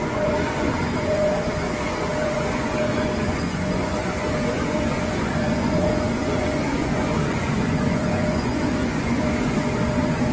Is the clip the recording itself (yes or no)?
no